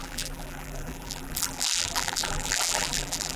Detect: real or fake fake